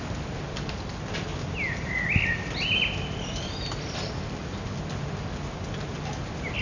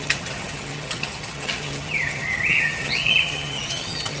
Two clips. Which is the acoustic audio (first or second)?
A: first